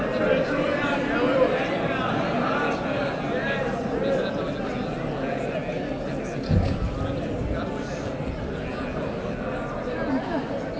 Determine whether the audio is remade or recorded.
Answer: recorded